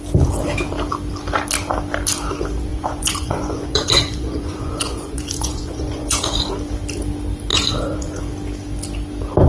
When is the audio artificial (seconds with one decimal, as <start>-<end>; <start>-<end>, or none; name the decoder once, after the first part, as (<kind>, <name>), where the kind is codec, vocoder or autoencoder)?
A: 2.7-6.5 (vocoder, Vocos); 7.5-8.2